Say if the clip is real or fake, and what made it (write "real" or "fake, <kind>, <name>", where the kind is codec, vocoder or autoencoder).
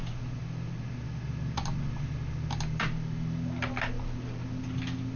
real